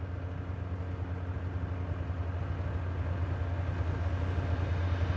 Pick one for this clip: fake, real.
real